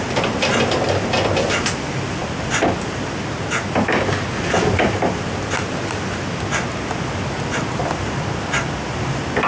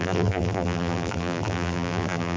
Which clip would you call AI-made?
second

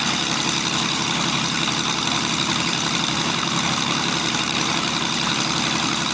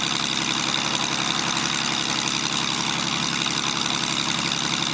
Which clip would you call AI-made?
first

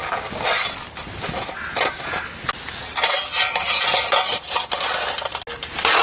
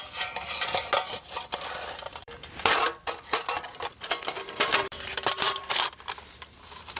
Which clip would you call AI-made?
second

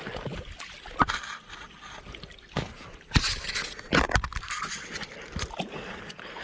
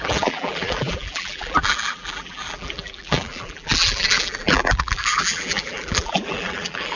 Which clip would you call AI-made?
second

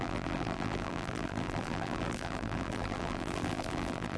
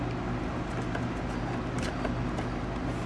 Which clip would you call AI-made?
first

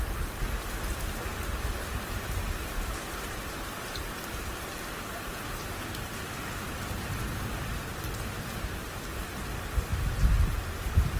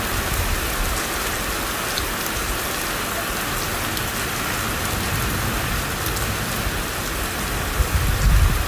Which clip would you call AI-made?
first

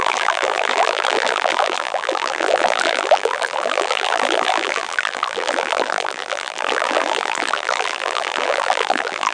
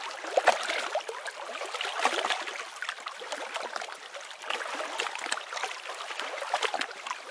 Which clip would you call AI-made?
first